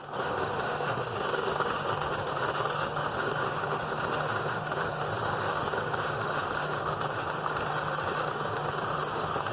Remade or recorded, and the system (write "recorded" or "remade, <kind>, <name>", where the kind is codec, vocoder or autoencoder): remade, autoencoder, DAC-VAE